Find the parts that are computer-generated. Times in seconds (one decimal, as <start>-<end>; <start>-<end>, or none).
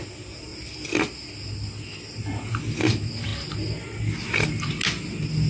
none